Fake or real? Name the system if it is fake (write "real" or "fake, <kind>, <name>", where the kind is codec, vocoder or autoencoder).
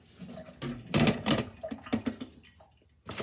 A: real